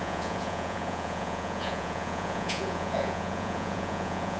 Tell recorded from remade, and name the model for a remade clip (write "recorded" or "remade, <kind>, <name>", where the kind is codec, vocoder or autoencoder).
remade, vocoder, Vocos